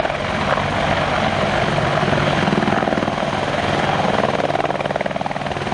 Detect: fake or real real